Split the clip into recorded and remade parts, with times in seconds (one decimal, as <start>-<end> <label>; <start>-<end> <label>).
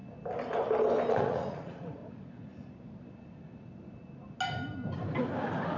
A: 0.0-1.1 recorded; 1.1-2.0 remade; 2.0-5.8 recorded